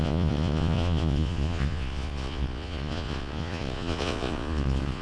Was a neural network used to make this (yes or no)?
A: yes